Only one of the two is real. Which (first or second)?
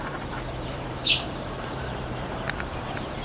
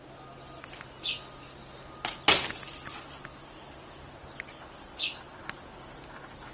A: second